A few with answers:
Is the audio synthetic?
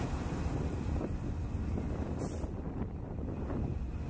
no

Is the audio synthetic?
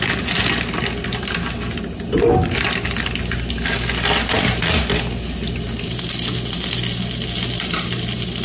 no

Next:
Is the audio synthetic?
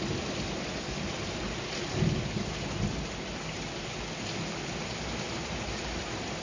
no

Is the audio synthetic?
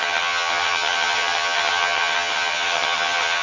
yes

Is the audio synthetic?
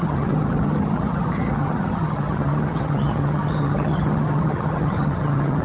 yes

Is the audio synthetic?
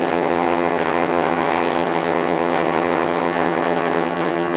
yes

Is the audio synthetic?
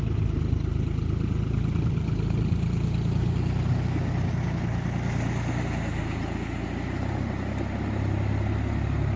no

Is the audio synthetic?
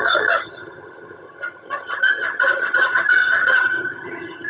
yes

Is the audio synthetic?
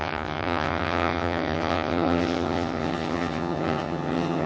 yes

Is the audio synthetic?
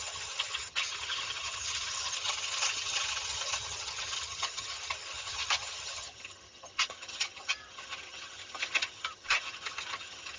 yes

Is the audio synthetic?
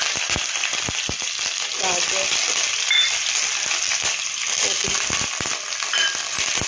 no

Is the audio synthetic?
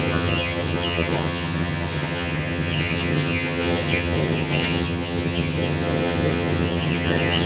yes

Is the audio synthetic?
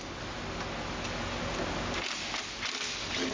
no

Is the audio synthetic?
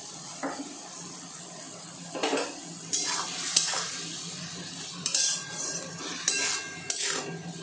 no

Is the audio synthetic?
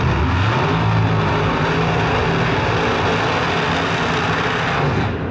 no